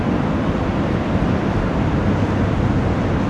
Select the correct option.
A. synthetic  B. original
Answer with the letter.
B